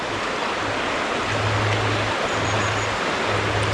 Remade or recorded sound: recorded